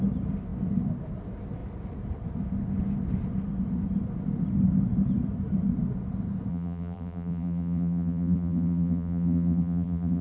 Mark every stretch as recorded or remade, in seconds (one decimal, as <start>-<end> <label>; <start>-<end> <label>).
0.0-6.5 recorded; 6.5-10.2 remade